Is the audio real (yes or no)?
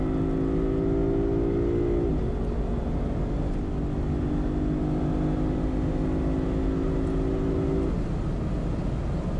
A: yes